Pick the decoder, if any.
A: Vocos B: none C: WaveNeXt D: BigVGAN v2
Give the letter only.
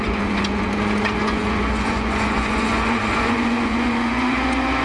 A